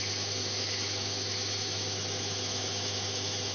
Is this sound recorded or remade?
remade